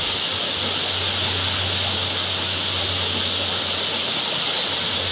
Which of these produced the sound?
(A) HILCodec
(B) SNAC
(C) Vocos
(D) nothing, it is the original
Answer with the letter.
D